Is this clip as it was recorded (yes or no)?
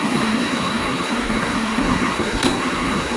no